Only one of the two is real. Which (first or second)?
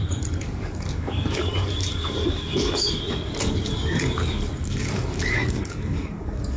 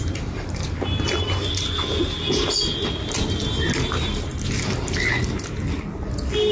second